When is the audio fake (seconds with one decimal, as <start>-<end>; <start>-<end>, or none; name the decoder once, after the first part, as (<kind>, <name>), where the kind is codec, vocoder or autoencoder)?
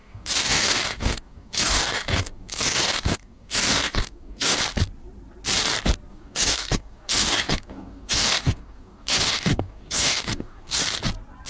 0.0-4.6 (codec, DAC); 6.1-10.8